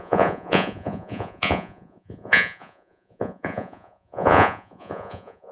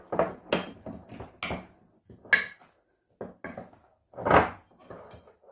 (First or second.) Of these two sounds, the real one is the second